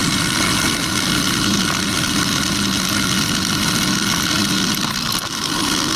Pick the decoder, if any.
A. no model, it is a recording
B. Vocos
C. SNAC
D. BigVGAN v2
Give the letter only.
A